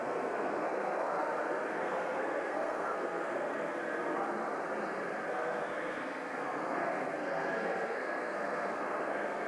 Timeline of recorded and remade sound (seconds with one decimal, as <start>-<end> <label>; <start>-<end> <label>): 0.0-1.2 remade; 1.2-1.7 recorded; 1.7-3.8 remade; 3.8-5.3 recorded; 5.3-9.5 remade